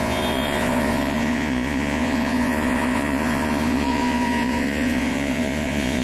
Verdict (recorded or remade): remade